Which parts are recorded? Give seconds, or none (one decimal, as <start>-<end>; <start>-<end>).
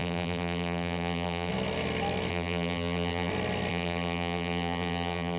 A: 1.5-2.3; 3.3-3.7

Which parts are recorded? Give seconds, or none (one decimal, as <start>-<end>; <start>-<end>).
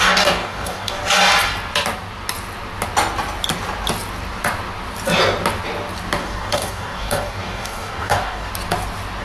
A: 1.0-6.2; 8.5-9.2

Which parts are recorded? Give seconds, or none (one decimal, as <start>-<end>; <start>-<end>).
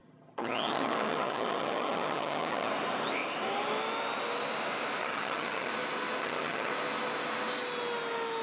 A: 2.7-5.0; 5.7-6.2; 6.7-8.4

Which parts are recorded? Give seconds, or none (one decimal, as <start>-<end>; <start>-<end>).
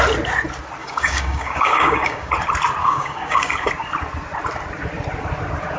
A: 0.0-0.8; 2.3-2.8; 3.7-5.8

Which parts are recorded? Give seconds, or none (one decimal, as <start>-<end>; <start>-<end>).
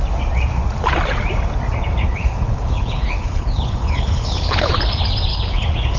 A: 0.0-2.0; 4.7-5.3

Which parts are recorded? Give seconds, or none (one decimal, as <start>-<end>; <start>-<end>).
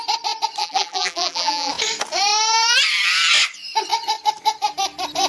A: 0.0-0.6; 1.7-5.3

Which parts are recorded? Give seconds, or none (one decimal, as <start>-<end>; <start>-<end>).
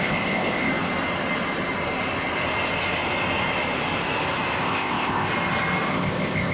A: 0.7-4.6; 5.3-5.9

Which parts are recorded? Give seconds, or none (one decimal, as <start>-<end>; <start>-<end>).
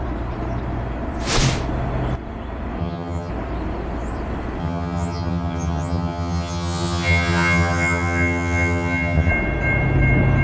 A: 0.0-2.8; 3.3-4.6; 9.3-10.4